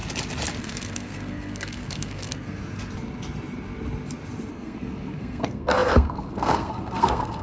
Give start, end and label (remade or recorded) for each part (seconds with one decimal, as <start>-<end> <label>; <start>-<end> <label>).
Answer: 0.0-0.6 recorded; 0.6-2.6 remade; 2.6-4.5 recorded; 4.5-7.4 remade